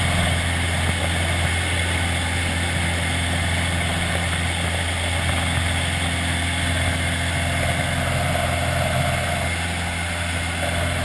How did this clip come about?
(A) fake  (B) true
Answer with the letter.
B